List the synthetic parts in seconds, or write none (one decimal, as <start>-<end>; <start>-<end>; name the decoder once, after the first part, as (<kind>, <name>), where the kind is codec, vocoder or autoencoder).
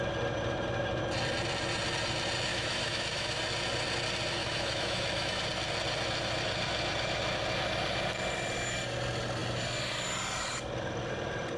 2.5-3.4 (autoencoder, DAC-VAE); 4.4-5.4